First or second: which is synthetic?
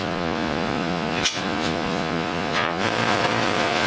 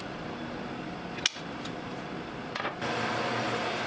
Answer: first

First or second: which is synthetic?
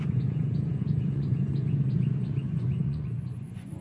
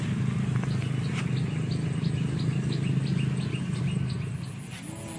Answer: first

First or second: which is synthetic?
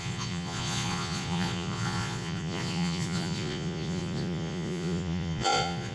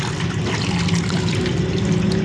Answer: first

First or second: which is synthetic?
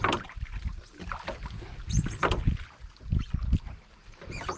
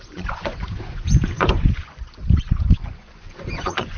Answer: second